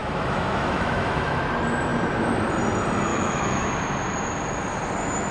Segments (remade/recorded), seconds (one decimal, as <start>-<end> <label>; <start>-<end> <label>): 0.0-1.4 remade; 1.4-3.1 recorded; 3.1-3.7 remade; 3.7-5.3 recorded